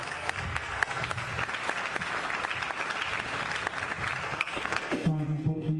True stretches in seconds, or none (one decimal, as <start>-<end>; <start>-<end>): 1.3-4.2